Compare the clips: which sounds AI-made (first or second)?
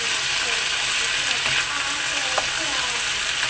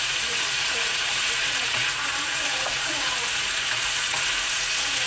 second